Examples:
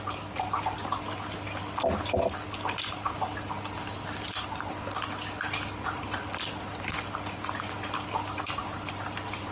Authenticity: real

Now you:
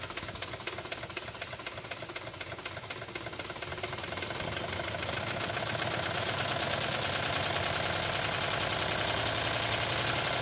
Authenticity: real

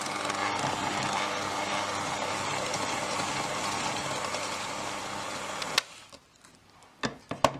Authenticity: real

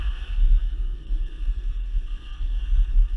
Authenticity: fake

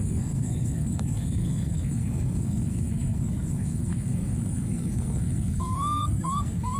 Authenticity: fake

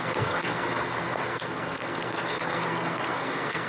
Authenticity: fake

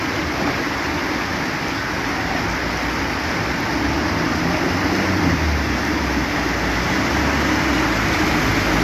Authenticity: real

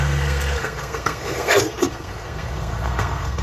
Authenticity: fake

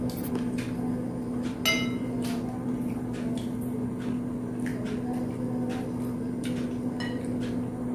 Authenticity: real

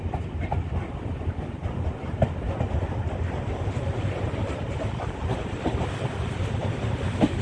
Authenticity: real